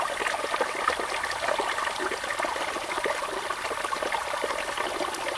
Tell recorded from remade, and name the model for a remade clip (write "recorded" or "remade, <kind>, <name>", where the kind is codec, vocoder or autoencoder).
recorded